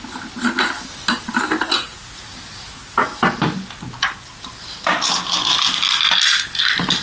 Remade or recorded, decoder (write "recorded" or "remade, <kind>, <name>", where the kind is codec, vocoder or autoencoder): recorded